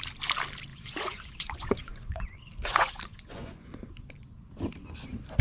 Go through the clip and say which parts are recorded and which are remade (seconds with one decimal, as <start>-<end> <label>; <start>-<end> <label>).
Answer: 0.0-0.7 recorded; 0.7-3.9 remade; 3.9-5.4 recorded